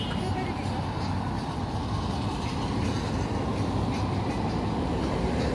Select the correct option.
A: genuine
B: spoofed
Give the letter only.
A